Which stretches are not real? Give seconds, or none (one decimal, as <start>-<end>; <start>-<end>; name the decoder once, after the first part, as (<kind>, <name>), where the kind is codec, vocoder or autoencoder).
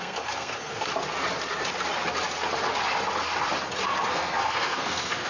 0.0-0.9 (codec, SNAC); 4.1-5.3